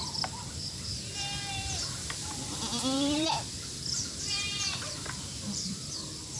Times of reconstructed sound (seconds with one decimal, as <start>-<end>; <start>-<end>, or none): 0.0-1.0; 2.7-5.8